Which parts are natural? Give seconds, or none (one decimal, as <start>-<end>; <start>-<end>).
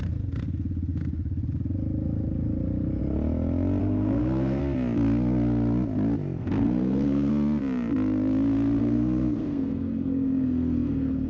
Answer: 0.0-3.8; 4.6-6.4; 7.3-8.8